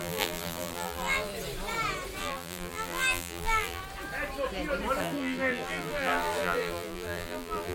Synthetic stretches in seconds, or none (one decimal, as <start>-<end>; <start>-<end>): 0.0-1.3; 2.2-3.8; 5.0-7.7